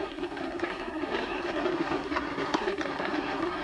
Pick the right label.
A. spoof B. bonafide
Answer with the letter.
A